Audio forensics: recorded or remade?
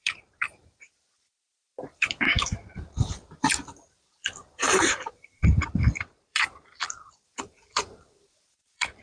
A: remade